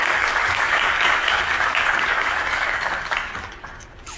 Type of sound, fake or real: fake